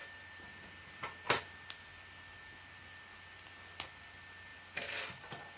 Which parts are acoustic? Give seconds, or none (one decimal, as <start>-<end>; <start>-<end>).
0.0-5.6